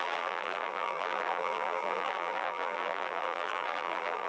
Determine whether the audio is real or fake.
fake